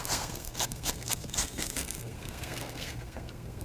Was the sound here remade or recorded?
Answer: remade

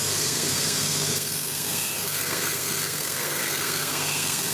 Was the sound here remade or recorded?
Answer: remade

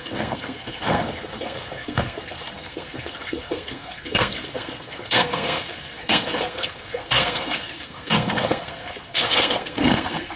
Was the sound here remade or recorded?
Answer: remade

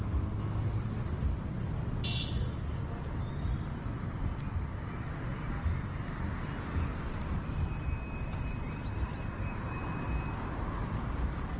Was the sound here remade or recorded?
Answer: recorded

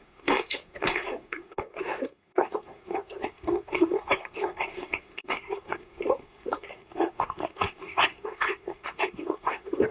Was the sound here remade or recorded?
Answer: remade